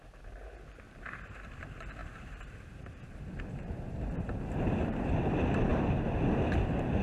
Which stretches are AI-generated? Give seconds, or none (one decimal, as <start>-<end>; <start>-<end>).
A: 2.0-5.3; 5.7-6.2